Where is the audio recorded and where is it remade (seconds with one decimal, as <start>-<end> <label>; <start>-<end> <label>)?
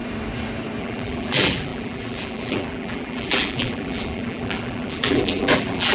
0.0-0.8 recorded; 0.8-5.9 remade